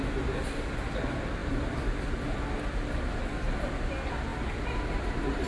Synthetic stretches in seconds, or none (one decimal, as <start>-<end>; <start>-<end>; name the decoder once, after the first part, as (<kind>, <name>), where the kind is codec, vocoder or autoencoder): none